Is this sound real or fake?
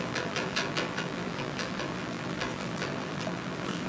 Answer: fake